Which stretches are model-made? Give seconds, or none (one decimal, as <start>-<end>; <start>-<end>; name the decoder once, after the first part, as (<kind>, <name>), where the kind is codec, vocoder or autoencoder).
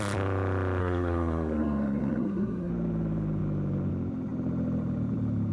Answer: 0.8-2.7 (codec, SNAC)